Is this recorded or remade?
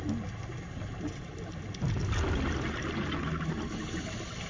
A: recorded